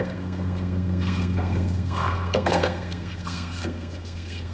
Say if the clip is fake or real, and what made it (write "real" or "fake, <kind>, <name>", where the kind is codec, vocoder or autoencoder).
fake, codec, SNAC